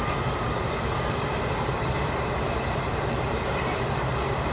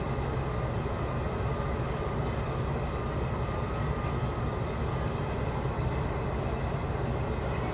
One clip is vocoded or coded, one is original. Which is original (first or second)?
second